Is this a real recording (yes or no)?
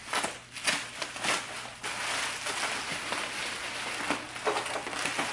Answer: yes